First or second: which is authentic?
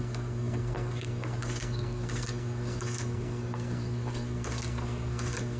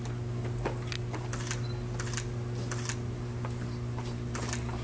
second